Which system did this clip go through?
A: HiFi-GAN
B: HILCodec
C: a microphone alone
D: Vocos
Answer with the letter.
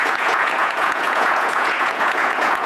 D